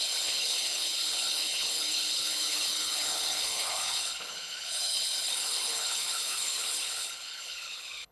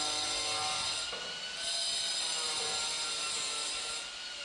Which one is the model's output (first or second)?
first